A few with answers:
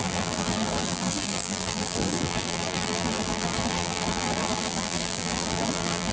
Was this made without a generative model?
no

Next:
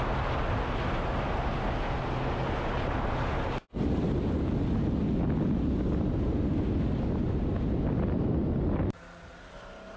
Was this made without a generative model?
yes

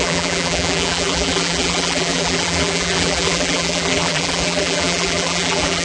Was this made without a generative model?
no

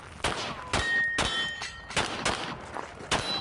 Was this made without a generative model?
yes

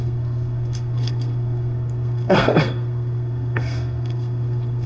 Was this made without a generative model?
no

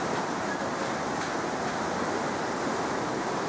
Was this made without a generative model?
yes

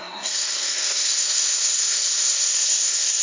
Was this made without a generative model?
no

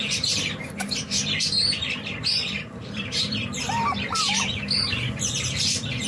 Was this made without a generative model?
no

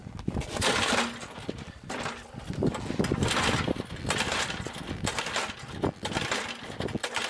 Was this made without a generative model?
yes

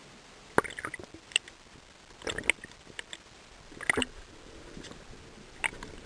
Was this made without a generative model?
yes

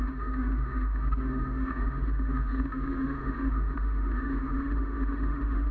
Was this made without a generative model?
no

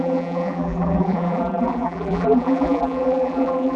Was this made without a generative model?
no